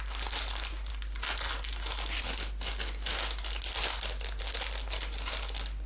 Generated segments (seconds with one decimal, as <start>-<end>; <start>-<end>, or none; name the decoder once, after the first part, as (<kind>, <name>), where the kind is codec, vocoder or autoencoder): none